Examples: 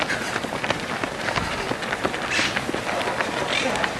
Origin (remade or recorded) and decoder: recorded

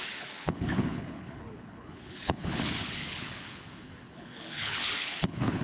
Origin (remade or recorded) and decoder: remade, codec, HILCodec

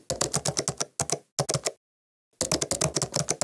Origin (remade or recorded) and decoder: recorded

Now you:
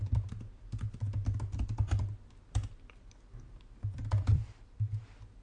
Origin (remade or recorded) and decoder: remade, vocoder, BigVGAN v2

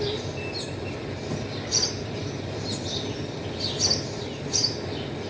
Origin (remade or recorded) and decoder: recorded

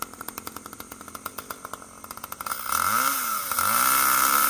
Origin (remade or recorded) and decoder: recorded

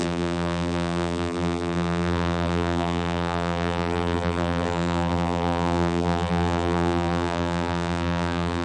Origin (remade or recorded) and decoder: remade, vocoder, BigVGAN v2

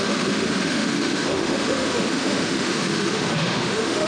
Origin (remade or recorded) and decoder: remade, autoencoder, DAC-VAE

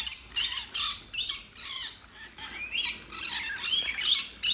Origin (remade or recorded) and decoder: recorded